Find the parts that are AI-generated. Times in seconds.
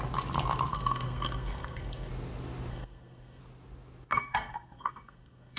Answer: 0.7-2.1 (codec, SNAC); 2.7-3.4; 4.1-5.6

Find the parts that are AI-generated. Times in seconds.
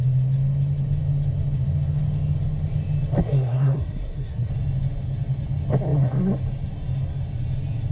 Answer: 3.2-4.5 (codec, SNAC)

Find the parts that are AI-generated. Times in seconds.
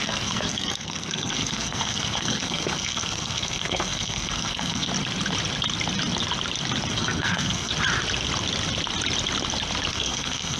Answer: 0.0-4.9 (codec, SNAC); 6.9-7.7; 9.9-10.6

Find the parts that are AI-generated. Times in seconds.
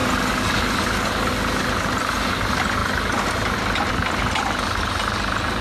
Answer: none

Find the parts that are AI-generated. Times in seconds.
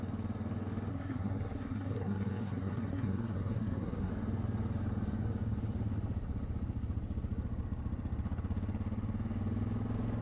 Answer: 0.9-4.1 (codec, SNAC)